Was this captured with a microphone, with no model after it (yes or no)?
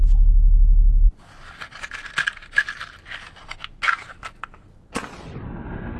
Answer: yes